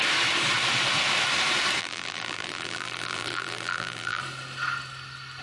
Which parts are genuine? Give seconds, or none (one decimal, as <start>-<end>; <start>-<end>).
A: 0.0-1.8; 4.2-5.4